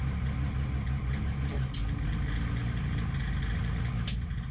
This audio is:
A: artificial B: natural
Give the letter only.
B